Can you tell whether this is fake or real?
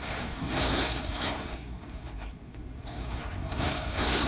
fake